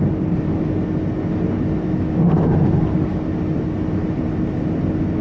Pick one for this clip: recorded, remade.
recorded